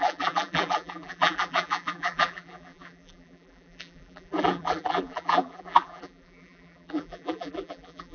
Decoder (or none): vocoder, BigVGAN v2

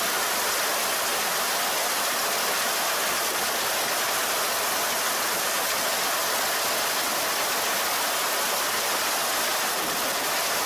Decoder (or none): none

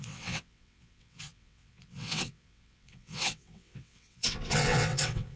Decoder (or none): vocoder, WaveNeXt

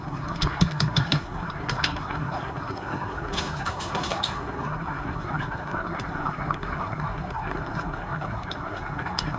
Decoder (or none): codec, SNAC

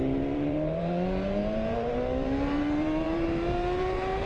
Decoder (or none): vocoder, BigVGAN v2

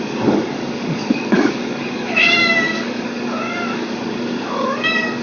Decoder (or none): codec, DAC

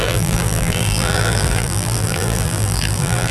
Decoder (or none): vocoder, BigVGAN v2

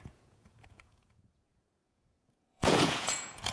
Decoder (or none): vocoder, Vocos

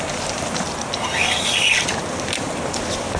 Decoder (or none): none